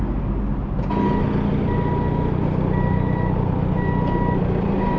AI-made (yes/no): no